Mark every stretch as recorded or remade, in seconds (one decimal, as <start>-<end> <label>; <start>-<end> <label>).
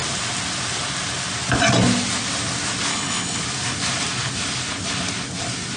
0.0-2.9 recorded; 2.9-3.4 remade; 3.4-5.8 recorded